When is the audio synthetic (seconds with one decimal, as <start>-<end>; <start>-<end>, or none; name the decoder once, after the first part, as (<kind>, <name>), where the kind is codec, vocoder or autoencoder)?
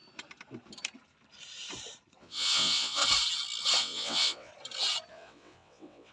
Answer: 2.2-3.0 (vocoder, WaveNeXt); 3.8-4.5; 5.1-6.1